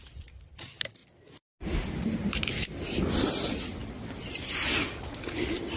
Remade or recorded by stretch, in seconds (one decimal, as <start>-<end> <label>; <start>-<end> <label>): 0.0-5.8 recorded